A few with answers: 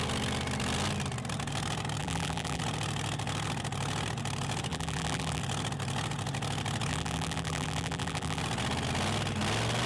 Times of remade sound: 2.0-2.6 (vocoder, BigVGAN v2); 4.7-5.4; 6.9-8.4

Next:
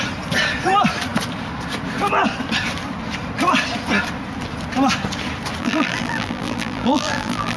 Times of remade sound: 5.6-7.6 (vocoder, BigVGAN v2)

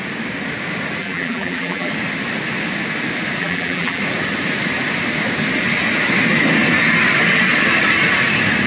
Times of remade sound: 1.0-1.9 (vocoder, BigVGAN v2); 3.4-4.0

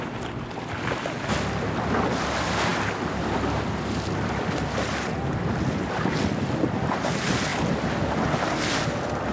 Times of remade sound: none

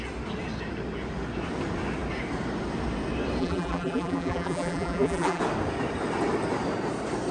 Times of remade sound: 3.4-5.4 (vocoder, BigVGAN v2)